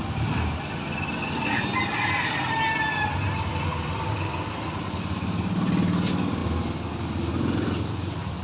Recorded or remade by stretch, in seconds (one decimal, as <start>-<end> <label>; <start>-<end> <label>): 0.0-8.4 recorded